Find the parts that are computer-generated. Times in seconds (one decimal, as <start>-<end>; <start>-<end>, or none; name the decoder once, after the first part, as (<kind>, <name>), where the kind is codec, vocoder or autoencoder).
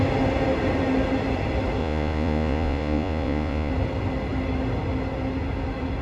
1.8-3.7 (vocoder, Vocos)